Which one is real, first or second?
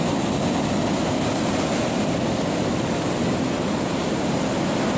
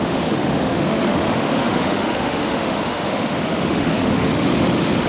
first